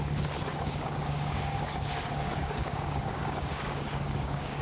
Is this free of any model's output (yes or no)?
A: no